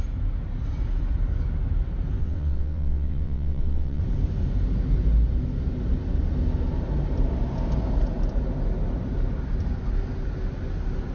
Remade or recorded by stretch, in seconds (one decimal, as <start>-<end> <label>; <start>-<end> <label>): 0.0-2.2 recorded; 2.2-4.0 remade; 4.0-11.1 recorded